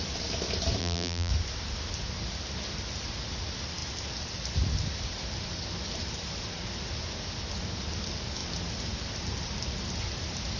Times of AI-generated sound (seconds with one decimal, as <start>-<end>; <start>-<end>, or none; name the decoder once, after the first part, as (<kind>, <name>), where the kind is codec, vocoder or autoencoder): 0.8-1.3 (vocoder, BigVGAN v2)